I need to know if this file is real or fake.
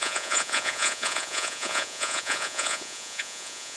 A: fake